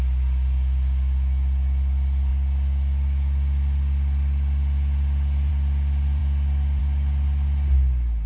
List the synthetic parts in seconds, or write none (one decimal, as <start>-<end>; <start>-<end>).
none